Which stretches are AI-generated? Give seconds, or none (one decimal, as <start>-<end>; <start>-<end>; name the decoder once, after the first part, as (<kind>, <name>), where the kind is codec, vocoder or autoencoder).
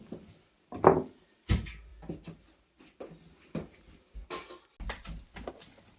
none